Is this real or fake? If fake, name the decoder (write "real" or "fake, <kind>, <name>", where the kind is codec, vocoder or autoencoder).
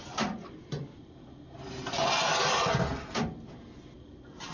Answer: real